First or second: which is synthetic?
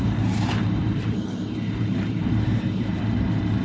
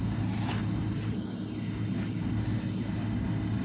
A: first